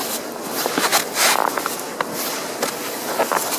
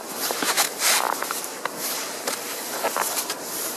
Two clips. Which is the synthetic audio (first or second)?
second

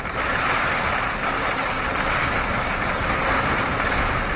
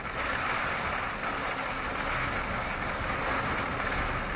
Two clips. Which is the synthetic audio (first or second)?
first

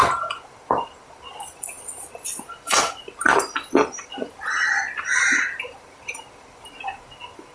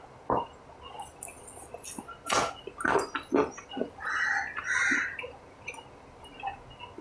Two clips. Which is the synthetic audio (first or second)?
first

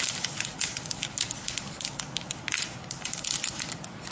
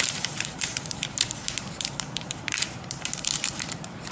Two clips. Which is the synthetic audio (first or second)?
second